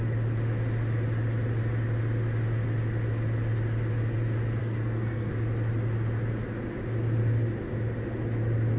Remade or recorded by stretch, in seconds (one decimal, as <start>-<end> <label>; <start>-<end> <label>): 0.0-4.6 recorded; 4.6-5.3 remade; 5.3-8.8 recorded